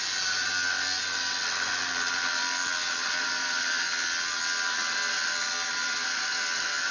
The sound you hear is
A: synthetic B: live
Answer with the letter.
B